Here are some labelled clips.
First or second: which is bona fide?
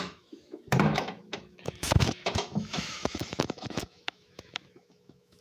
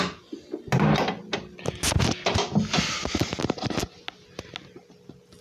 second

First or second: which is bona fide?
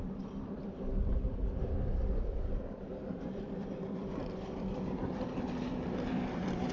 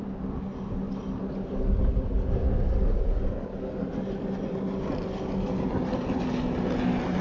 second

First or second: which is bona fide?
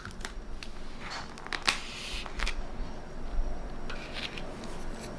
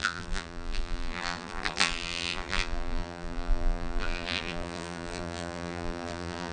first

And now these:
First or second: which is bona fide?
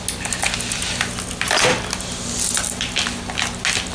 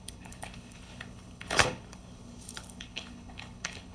first